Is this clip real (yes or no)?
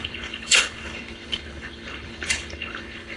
no